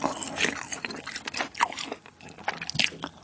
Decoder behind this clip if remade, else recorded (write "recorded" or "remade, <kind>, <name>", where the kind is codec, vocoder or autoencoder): recorded